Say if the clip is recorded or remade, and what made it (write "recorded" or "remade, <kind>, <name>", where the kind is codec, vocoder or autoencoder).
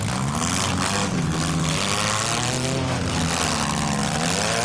recorded